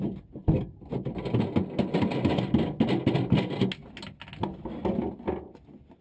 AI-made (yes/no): no